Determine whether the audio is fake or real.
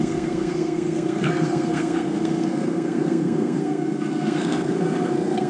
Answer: fake